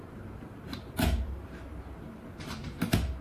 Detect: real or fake fake